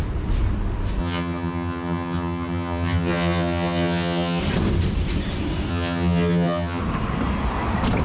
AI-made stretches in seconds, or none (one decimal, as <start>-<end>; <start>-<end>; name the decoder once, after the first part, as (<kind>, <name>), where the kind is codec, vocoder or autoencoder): 1.0-4.4 (vocoder, HiFi-GAN); 5.7-6.8